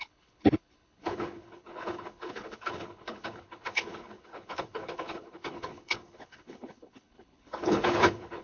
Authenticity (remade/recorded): remade